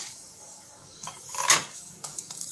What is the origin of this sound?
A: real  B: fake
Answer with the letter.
B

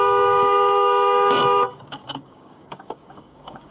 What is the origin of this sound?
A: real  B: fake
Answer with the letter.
B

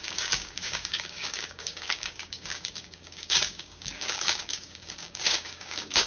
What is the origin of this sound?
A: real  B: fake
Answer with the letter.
B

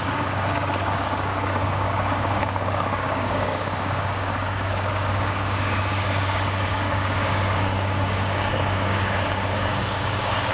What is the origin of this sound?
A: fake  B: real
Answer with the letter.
A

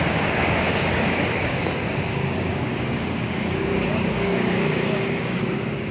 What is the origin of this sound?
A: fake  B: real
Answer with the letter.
A